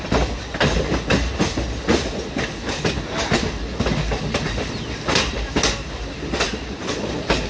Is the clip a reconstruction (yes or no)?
no